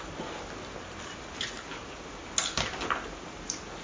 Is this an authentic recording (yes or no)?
yes